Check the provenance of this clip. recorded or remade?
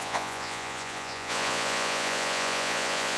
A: remade